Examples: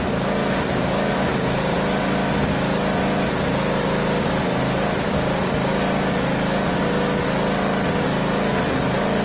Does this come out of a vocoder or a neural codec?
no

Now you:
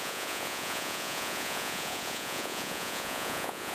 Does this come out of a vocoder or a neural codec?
yes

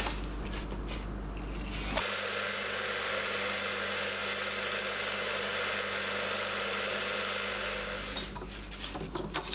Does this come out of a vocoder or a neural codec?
no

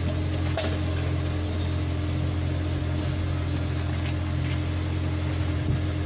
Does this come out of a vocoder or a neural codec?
no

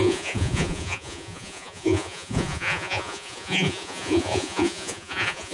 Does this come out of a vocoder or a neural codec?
yes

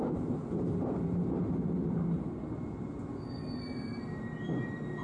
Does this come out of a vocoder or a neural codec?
no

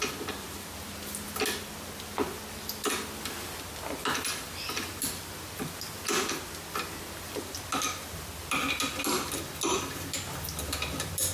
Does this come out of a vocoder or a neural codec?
no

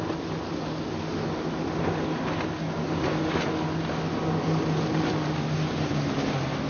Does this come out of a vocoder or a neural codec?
no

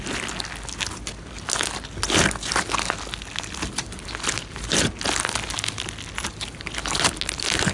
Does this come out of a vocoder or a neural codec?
no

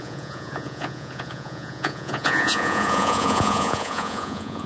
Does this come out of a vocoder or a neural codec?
yes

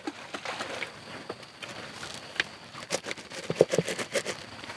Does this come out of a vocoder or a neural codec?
no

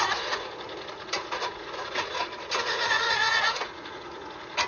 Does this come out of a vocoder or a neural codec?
yes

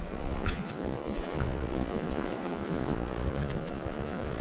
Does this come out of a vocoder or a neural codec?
yes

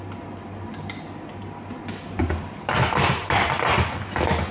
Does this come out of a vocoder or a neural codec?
no